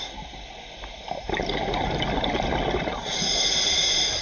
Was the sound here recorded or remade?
recorded